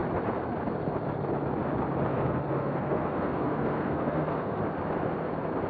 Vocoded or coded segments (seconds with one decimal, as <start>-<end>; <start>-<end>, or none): 2.1-4.6